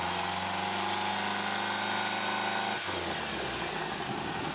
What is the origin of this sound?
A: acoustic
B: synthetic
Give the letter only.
A